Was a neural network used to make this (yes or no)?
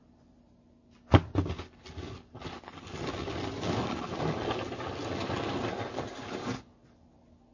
no